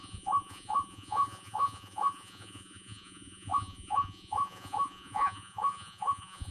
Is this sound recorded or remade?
remade